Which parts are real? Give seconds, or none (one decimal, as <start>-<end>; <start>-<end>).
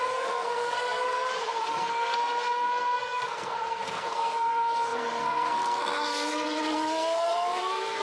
none